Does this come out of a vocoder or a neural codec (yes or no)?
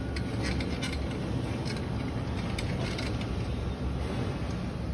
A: no